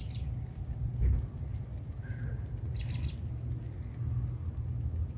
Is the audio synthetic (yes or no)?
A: no